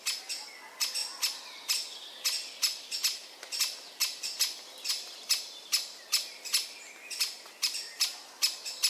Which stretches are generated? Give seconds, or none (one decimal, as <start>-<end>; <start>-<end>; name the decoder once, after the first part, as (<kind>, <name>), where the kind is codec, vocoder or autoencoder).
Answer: none